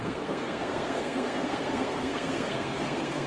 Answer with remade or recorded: remade